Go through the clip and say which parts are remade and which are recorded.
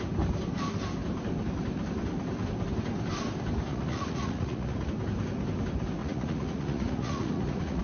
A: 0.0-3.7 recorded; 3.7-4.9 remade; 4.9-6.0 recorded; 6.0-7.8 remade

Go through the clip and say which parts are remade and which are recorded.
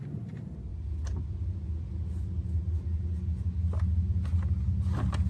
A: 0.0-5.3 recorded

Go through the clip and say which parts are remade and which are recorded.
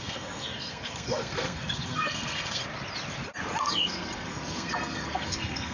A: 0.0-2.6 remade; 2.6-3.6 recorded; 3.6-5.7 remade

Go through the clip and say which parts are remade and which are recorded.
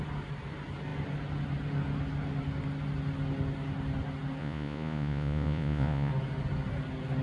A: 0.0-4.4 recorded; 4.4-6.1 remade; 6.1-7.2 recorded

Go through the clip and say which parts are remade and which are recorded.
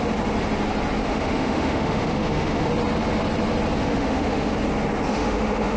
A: 0.0-1.0 recorded; 1.0-2.7 remade; 2.7-3.8 recorded; 3.8-4.5 remade; 4.5-5.1 recorded; 5.1-5.8 remade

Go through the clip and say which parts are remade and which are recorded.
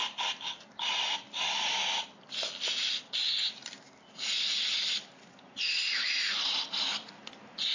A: 0.0-7.7 recorded